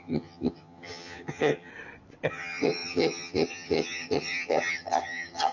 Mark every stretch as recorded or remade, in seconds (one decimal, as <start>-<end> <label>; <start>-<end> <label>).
0.0-1.7 remade; 1.7-2.3 recorded; 2.3-5.5 remade